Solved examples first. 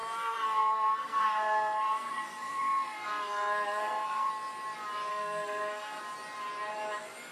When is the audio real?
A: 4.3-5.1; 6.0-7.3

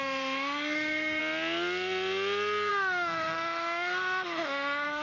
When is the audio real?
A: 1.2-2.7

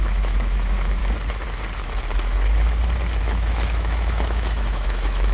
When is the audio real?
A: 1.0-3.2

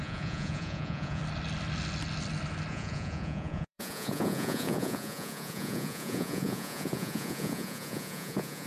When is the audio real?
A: 1.2-2.7